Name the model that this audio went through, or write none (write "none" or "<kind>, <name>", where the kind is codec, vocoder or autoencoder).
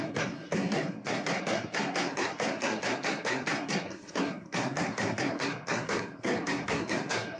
codec, SNAC